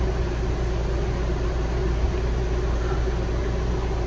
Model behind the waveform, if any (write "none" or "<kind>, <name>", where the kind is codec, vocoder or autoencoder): none